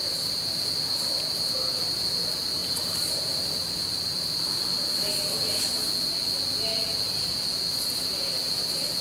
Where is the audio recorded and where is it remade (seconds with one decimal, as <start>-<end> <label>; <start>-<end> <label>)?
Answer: 0.0-9.0 recorded